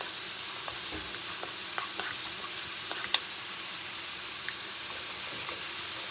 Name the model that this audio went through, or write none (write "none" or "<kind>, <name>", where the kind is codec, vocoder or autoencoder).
vocoder, BigVGAN v2